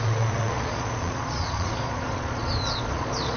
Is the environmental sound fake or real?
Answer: fake